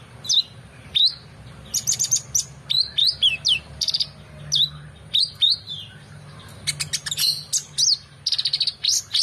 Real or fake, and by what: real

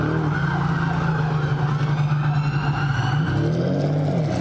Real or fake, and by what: real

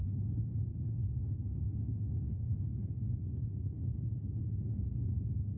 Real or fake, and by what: fake, codec, HILCodec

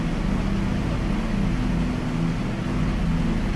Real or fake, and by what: real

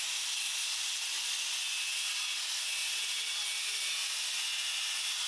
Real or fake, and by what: real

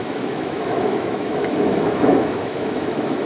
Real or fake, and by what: fake, autoencoder, DAC-VAE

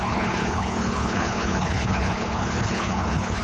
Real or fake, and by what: fake, codec, HILCodec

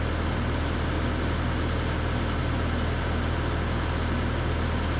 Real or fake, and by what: real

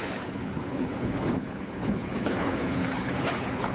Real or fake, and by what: fake, codec, HILCodec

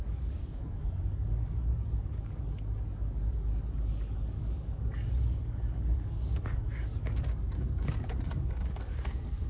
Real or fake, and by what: fake, codec, DAC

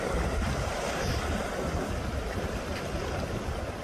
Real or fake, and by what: fake, vocoder, BigVGAN v2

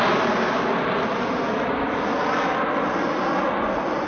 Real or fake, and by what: real